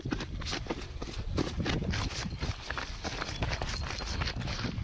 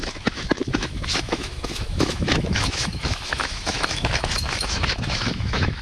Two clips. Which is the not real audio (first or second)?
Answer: second